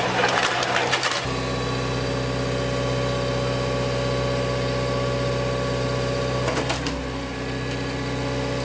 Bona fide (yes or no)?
yes